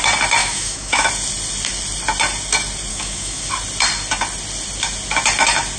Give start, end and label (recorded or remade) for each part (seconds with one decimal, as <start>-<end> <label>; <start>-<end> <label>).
0.0-0.4 recorded; 0.4-1.1 remade; 1.1-2.9 recorded; 2.9-3.5 remade; 3.5-5.8 recorded